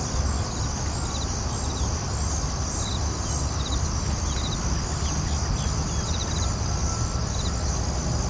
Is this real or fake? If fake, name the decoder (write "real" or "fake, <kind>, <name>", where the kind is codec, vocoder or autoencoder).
real